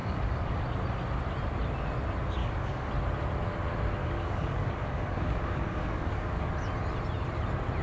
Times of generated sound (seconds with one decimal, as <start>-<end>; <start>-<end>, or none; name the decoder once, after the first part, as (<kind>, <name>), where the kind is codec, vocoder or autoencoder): 0.0-0.6 (codec, DAC); 2.4-2.9; 4.0-6.5